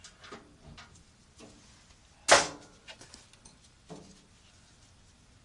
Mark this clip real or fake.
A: real